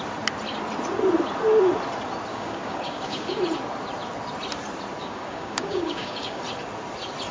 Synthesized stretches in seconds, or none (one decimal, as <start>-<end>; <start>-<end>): 2.3-3.4; 5.0-6.4